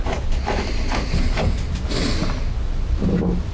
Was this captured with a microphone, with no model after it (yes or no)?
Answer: yes